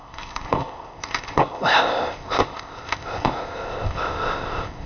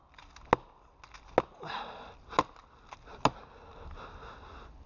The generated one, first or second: first